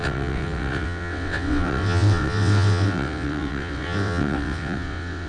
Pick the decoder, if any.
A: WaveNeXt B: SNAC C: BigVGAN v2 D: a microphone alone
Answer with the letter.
A